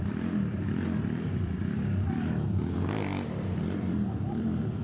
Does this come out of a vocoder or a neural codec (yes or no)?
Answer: yes